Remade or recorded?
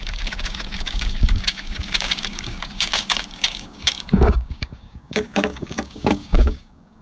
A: remade